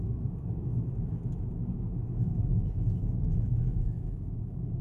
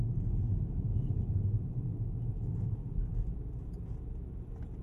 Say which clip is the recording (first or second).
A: second